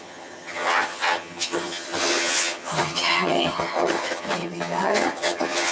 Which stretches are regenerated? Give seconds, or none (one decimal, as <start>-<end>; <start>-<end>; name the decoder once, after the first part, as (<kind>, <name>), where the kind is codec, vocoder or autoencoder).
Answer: 0.0-5.7 (vocoder, HiFi-GAN)